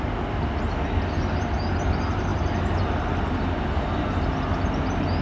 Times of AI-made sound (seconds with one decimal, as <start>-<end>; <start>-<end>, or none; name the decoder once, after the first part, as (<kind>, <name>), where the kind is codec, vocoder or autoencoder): none